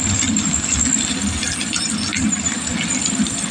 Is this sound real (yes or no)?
yes